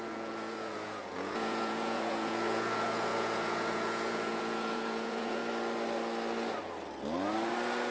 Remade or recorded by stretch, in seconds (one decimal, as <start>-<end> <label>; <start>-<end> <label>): 0.0-5.4 remade; 5.4-7.9 recorded